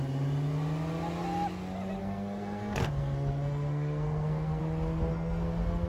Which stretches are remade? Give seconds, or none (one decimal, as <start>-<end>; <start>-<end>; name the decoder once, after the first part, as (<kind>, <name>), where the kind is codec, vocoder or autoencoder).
2.0-4.6 (codec, SNAC); 5.1-5.9